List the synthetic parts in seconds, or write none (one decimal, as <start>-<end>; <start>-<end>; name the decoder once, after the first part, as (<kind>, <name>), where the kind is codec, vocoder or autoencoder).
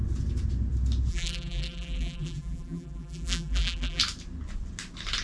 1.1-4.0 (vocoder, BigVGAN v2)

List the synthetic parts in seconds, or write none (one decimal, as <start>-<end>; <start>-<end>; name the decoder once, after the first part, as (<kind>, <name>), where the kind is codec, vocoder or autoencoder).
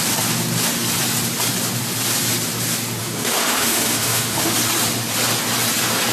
3.0-4.5 (autoencoder, DAC-VAE)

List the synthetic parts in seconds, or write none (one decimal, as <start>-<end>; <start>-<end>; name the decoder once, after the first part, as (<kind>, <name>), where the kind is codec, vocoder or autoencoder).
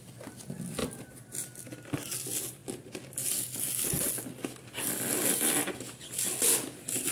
none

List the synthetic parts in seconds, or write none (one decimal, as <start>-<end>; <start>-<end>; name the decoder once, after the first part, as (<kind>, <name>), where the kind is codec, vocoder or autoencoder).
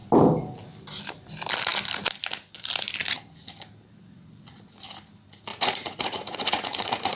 5.5-7.2 (vocoder, Vocos)